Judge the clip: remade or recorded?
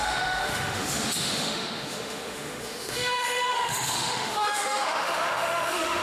remade